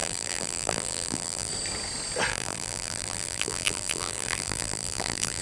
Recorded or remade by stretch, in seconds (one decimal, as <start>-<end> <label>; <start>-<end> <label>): 0.0-1.5 remade; 1.5-2.3 recorded; 2.3-5.4 remade